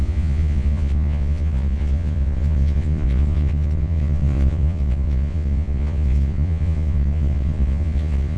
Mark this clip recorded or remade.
remade